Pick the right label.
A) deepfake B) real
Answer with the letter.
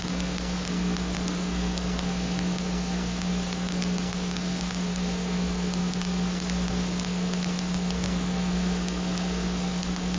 A